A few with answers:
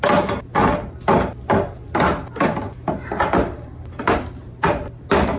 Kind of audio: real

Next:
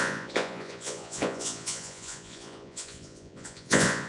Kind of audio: fake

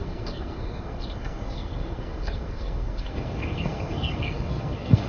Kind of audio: fake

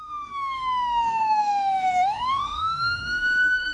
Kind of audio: fake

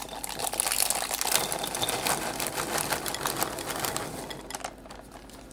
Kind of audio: real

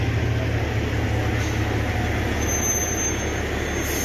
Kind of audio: real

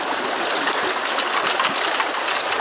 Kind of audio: real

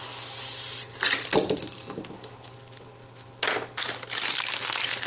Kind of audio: real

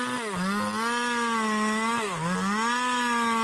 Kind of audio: real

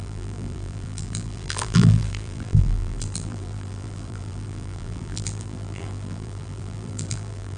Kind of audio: fake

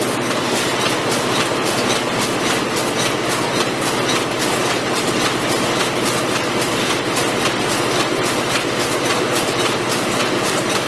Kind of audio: real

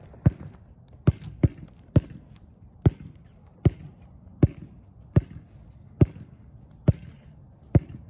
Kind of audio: real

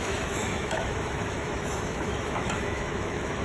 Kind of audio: fake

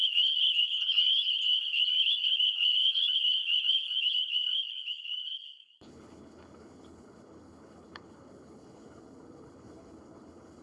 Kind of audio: fake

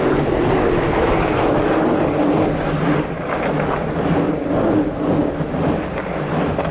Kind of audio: real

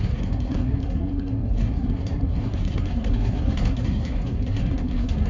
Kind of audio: fake